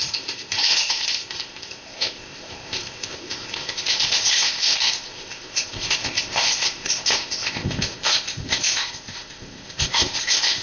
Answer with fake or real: fake